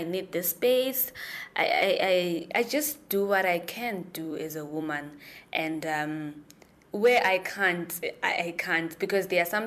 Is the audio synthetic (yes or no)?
yes